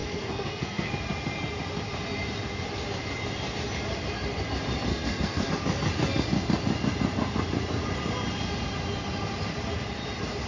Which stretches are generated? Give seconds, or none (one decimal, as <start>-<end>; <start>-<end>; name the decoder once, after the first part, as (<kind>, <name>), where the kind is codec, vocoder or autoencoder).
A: 0.0-0.9 (codec, SNAC); 4.9-5.5